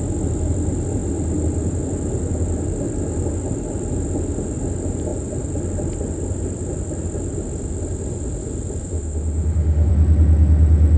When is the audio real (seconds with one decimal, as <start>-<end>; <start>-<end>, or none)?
0.0-8.8; 9.9-11.0